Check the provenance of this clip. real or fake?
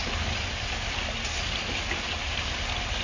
real